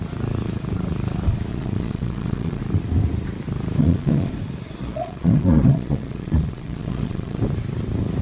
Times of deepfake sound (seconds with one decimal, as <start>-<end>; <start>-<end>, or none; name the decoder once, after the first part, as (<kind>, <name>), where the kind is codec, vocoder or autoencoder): 1.5-2.6 (vocoder, Vocos); 3.8-4.3; 4.8-7.4